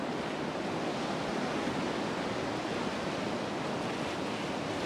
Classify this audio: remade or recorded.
recorded